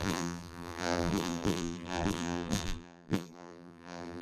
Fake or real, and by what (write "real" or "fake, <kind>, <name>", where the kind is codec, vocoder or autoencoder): fake, vocoder, BigVGAN v2